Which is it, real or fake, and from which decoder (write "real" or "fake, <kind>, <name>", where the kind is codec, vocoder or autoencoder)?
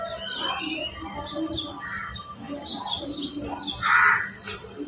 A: real